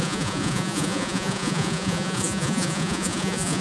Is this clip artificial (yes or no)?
yes